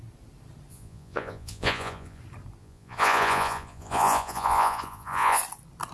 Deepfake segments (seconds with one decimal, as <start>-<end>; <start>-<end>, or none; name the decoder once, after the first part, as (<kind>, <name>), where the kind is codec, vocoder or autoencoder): 0.7-2.2 (vocoder, Vocos); 2.6-5.4